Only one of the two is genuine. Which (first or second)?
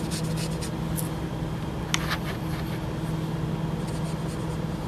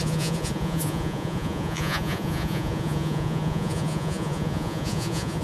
first